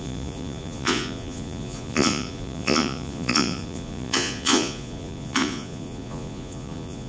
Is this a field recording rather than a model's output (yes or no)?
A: no